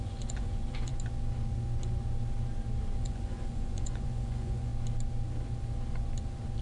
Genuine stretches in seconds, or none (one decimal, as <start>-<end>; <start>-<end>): 0.9-3.0; 4.7-6.6